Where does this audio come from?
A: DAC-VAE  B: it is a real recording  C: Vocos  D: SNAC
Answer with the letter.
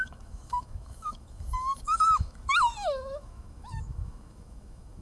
A